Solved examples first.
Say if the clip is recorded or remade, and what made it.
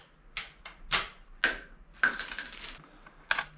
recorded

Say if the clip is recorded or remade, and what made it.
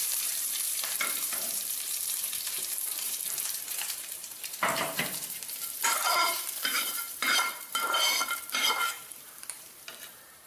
remade, vocoder, BigVGAN v2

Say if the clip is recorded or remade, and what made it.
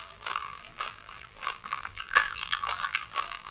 remade, vocoder, BigVGAN v2